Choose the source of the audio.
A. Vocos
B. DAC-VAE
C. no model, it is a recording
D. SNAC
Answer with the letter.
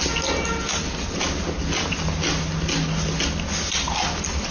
C